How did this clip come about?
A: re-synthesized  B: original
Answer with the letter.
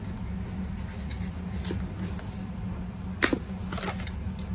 B